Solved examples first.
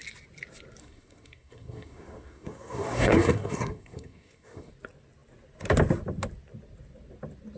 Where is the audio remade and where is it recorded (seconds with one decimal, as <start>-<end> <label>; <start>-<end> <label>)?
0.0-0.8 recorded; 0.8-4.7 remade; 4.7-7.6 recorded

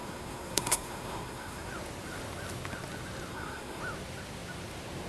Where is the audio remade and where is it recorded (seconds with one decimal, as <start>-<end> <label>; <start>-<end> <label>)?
0.0-1.7 remade; 1.7-3.3 recorded; 3.3-3.8 remade; 3.8-5.1 recorded

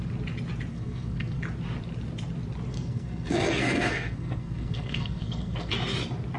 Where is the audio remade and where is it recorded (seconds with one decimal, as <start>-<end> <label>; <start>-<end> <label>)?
0.0-0.7 recorded; 0.7-1.4 remade; 1.4-2.7 recorded; 2.7-5.7 remade; 5.7-6.4 recorded

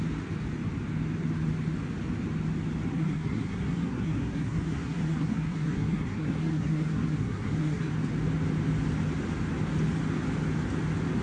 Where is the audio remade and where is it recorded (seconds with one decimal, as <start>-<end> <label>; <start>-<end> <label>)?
0.0-2.9 recorded; 2.9-7.9 remade; 7.9-11.2 recorded

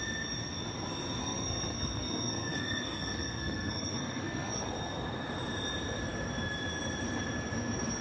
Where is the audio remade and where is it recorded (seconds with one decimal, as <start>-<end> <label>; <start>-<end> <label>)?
0.0-1.2 recorded; 1.2-4.7 remade; 4.7-8.0 recorded